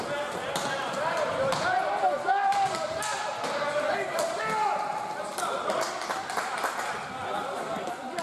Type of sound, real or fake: real